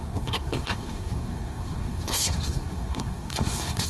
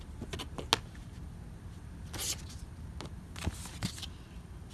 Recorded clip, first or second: second